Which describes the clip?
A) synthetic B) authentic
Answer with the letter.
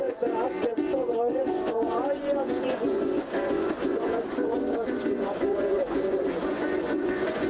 A